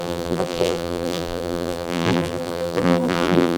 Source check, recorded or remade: remade